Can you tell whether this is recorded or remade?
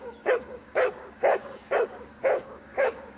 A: remade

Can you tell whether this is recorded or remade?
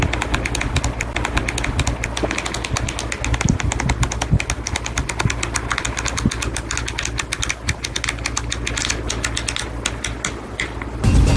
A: recorded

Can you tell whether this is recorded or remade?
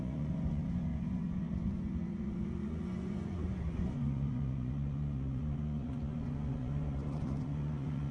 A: remade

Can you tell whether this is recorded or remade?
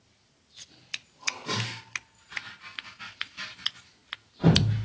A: recorded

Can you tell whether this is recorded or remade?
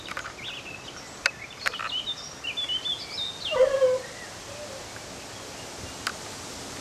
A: recorded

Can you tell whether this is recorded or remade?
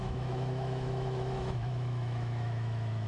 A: remade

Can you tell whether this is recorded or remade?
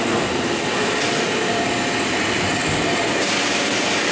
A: recorded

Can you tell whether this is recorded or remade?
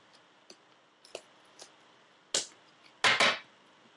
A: recorded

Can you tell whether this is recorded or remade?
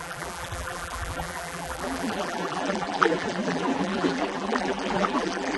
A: remade